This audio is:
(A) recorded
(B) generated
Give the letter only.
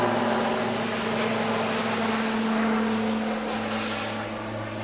A